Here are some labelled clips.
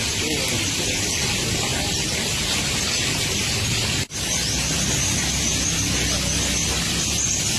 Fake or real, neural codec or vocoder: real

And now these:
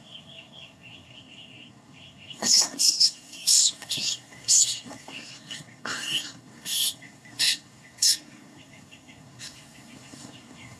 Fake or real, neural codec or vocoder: fake, codec, SNAC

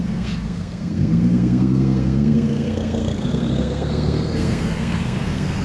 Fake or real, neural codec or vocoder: fake, codec, SNAC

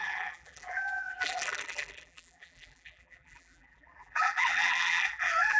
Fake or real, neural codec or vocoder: fake, vocoder, BigVGAN v2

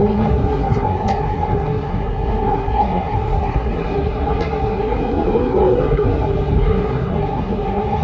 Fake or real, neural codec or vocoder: fake, codec, SNAC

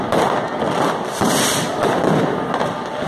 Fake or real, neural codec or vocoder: real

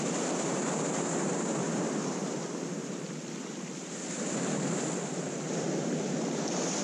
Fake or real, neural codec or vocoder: fake, vocoder, BigVGAN v2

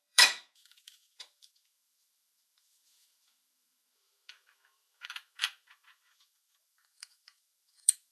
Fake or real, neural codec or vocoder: fake, autoencoder, DAC-VAE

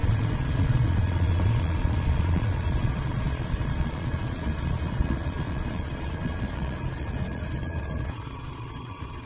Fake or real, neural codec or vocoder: fake, vocoder, Vocos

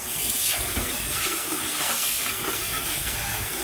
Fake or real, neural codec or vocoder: fake, codec, SNAC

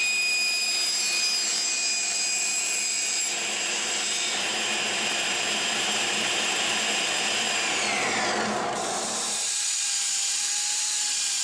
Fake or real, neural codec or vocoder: fake, vocoder, BigVGAN v2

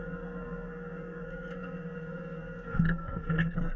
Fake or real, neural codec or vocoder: fake, codec, SNAC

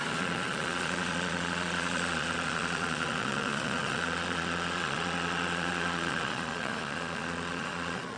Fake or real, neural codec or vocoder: fake, vocoder, Vocos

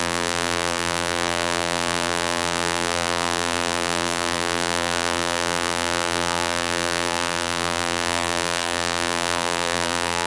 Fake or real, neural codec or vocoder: fake, vocoder, BigVGAN v2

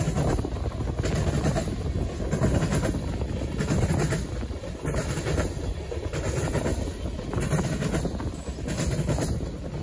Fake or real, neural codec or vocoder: real